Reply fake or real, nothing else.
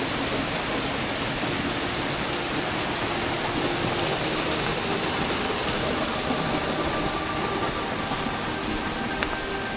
real